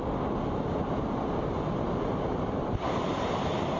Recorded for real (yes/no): yes